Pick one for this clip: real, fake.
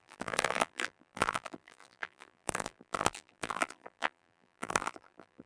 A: fake